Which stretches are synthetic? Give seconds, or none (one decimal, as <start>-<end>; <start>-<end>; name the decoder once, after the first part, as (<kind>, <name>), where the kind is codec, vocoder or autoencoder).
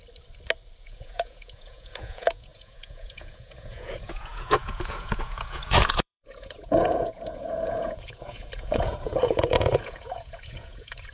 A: 0.8-11.1 (vocoder, Vocos)